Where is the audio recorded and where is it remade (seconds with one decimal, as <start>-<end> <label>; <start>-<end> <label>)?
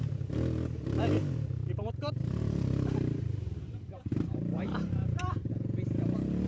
0.0-1.6 recorded; 1.6-5.5 remade; 5.5-6.5 recorded